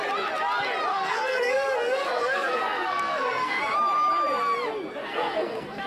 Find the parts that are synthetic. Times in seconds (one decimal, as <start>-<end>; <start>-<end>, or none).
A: 0.9-3.6; 5.0-5.9